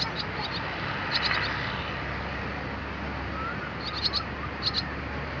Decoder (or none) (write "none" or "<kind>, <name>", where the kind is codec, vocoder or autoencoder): none